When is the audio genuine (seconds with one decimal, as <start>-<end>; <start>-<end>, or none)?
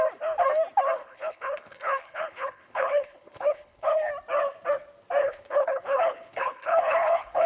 0.0-1.0; 4.1-5.2